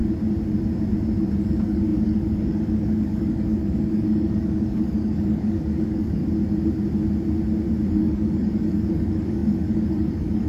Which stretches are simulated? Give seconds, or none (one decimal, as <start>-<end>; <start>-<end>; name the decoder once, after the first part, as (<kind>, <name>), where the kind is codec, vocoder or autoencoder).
1.4-6.2 (codec, DAC); 7.9-10.5